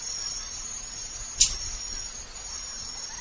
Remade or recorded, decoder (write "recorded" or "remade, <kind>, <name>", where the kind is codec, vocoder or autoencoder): recorded